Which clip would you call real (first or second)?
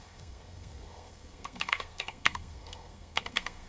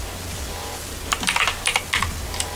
second